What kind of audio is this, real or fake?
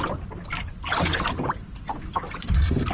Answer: real